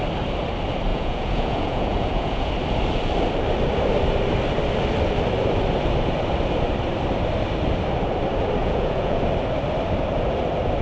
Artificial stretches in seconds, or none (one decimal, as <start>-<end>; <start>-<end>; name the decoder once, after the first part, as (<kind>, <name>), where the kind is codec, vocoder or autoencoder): 0.9-2.5 (vocoder, Vocos); 8.6-9.2